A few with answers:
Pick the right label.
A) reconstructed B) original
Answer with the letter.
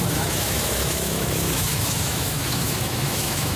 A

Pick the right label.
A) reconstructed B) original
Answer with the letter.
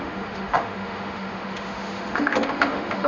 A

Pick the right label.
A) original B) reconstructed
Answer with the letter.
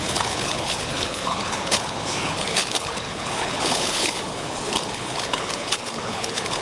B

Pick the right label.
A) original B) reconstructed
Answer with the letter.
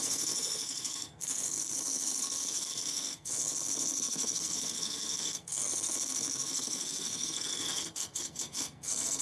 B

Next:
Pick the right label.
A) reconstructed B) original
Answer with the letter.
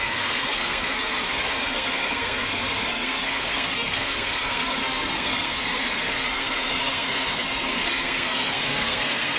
A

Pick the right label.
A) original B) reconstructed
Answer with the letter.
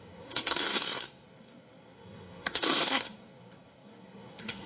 B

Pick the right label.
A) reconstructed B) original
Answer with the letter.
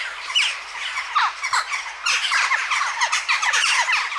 B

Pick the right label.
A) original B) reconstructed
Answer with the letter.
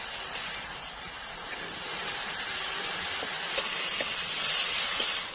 A